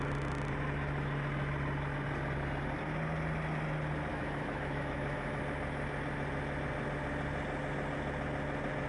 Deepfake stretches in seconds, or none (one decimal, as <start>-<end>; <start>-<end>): 4.1-5.4